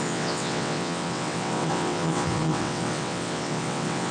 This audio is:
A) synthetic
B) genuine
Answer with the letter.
A